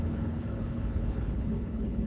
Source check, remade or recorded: remade